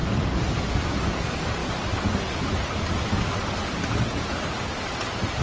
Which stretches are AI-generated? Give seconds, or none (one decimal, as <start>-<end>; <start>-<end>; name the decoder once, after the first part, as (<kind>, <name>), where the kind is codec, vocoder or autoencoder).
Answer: none